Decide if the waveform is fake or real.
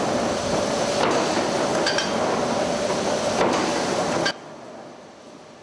real